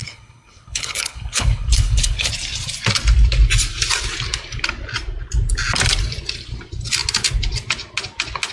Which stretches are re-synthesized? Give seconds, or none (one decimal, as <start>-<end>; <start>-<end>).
0.0-2.3

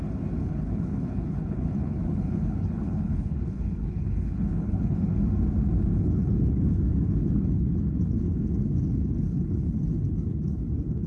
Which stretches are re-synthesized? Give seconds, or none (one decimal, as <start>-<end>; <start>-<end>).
0.4-5.2; 5.9-11.1

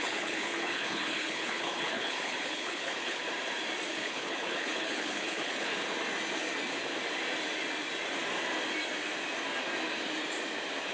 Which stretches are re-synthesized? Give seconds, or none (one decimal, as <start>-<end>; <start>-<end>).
0.0-3.2; 3.9-5.7